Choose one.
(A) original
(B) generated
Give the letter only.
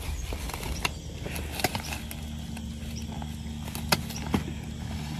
A